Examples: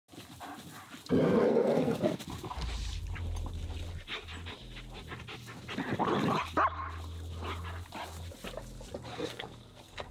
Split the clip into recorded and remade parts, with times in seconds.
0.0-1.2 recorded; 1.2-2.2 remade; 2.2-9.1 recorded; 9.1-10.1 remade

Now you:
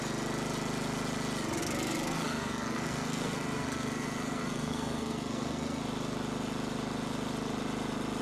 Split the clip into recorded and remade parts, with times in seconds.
0.0-1.6 recorded; 1.6-5.8 remade; 5.8-8.2 recorded

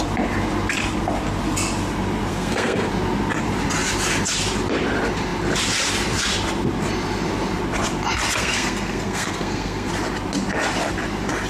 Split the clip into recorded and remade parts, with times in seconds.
0.0-2.3 recorded; 2.3-2.9 remade; 2.9-8.4 recorded; 8.4-9.9 remade; 9.9-11.5 recorded

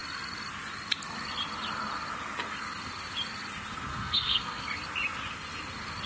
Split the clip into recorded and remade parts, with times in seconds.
0.0-3.9 recorded; 3.9-4.6 remade; 4.6-6.1 recorded

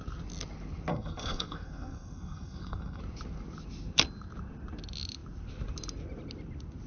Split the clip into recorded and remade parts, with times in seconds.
0.0-0.9 recorded; 0.9-3.0 remade; 3.0-6.9 recorded

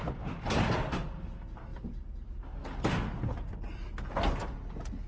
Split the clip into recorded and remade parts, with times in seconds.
0.0-5.1 recorded

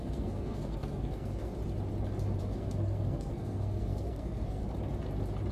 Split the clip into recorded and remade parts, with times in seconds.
0.0-1.5 remade; 1.5-2.4 recorded; 2.4-4.6 remade; 4.6-5.5 recorded